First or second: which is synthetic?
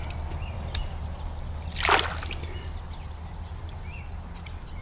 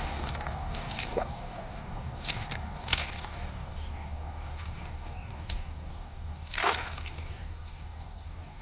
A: second